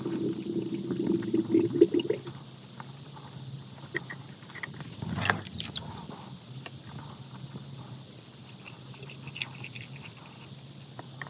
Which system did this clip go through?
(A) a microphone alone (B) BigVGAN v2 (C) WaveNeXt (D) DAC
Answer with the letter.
A